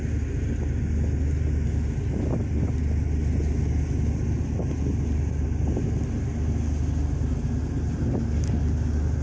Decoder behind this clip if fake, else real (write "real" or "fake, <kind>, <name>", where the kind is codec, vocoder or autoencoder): real